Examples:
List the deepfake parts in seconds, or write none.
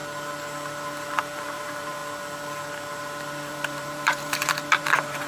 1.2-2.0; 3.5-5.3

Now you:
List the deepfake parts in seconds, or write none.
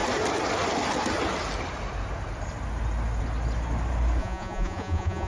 4.2-5.3